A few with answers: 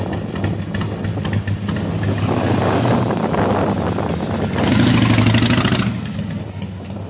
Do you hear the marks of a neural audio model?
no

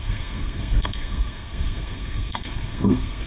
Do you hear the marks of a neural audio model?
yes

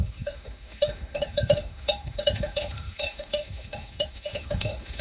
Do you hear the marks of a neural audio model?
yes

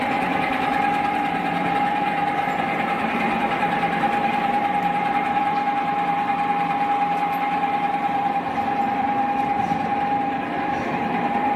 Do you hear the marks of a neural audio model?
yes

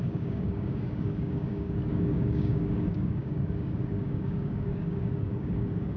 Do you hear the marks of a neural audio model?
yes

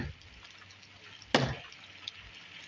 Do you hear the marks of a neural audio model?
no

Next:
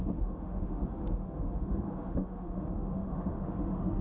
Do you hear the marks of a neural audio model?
yes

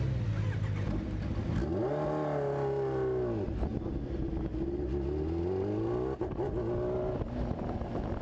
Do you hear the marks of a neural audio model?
no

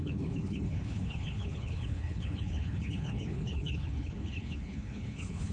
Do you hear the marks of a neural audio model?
yes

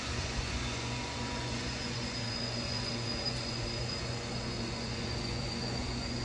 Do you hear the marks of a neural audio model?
yes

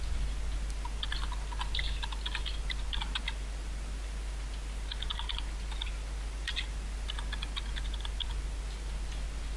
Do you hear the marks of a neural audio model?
no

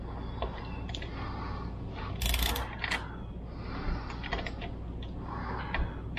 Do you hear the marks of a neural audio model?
no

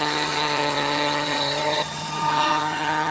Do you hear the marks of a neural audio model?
yes